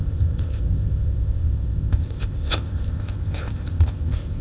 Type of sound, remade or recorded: remade